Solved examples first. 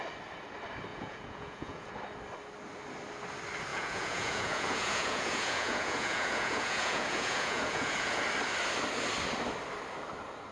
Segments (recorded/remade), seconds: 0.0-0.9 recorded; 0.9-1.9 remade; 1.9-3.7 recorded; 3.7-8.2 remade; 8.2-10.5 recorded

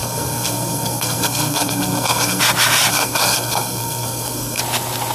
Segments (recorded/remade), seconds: 0.0-2.4 remade; 2.4-2.9 recorded; 2.9-4.6 remade; 4.6-5.1 recorded